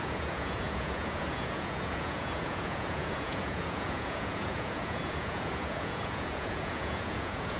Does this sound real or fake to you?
fake